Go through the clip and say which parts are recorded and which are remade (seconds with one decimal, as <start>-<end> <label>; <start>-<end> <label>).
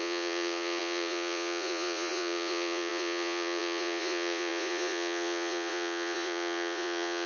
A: 0.0-7.3 remade